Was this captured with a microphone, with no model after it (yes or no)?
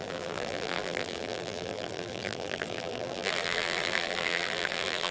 no